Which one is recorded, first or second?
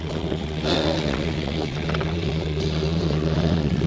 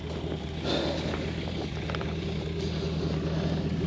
second